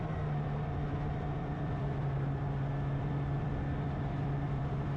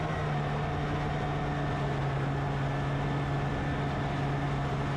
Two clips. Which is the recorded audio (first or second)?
second